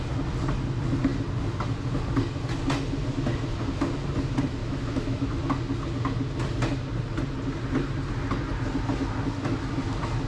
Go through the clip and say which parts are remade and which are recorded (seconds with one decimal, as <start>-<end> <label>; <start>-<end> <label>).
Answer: 0.0-4.6 recorded; 4.6-5.4 remade; 5.4-10.3 recorded